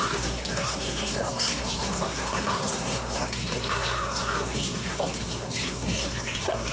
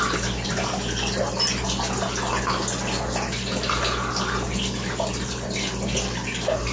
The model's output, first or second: first